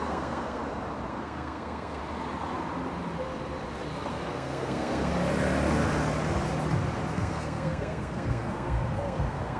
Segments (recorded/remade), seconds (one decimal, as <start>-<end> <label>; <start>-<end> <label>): 0.0-0.6 remade; 0.6-1.1 recorded; 1.1-2.0 remade; 2.0-4.1 recorded; 4.1-5.1 remade; 5.1-7.1 recorded; 7.1-9.6 remade